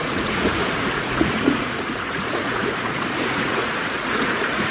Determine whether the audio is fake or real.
fake